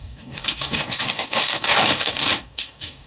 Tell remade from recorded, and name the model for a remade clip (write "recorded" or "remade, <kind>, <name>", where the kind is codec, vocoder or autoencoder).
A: remade, codec, DAC